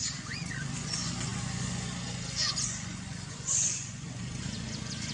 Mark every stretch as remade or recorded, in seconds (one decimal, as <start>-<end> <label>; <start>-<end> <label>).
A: 0.0-5.1 remade